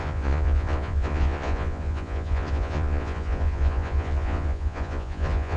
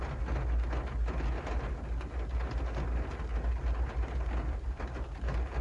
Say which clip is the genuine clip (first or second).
second